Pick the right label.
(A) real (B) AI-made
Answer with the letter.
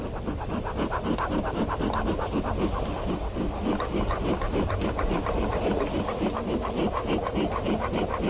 B